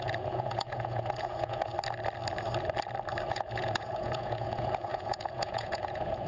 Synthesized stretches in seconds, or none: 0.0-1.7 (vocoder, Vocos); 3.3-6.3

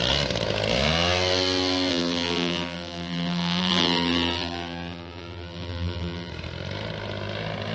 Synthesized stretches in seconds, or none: 1.9-6.3 (vocoder, BigVGAN v2)

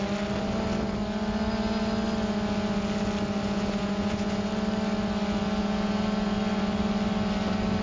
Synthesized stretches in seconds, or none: 3.4-4.5 (vocoder, Vocos); 5.6-6.4

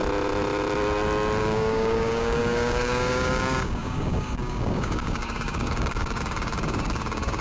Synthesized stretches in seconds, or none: 1.4-7.4 (codec, DAC)

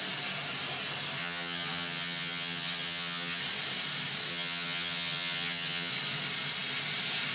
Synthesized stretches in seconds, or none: 1.2-3.4 (vocoder, HiFi-GAN); 4.3-5.9

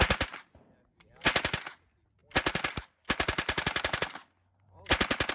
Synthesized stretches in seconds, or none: none

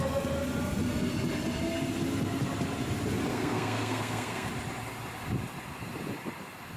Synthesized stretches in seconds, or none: 3.3-4.5 (codec, SNAC)